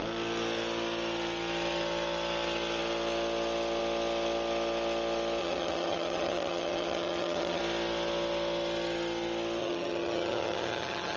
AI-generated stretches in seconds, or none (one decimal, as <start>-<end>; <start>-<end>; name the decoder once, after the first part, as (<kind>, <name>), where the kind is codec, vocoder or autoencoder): 5.4-7.6 (vocoder, HiFi-GAN); 9.6-11.2